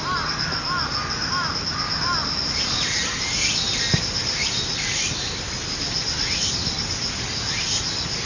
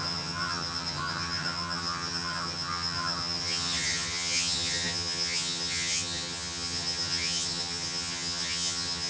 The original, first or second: first